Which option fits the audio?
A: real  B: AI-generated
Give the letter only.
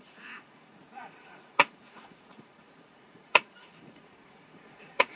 B